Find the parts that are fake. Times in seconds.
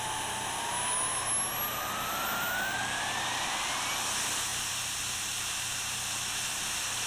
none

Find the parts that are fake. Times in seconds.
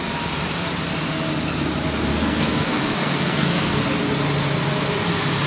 2.1-3.8 (codec, SNAC)